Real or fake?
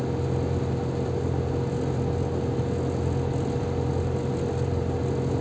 real